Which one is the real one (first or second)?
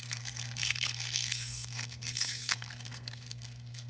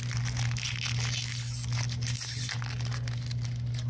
second